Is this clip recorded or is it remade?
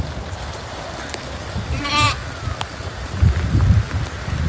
recorded